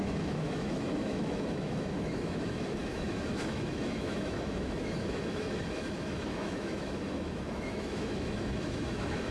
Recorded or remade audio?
remade